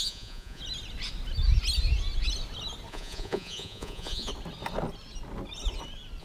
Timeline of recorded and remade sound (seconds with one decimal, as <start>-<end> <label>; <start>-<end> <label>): 0.0-0.6 remade; 0.6-2.9 recorded; 2.9-4.3 remade; 4.3-6.2 recorded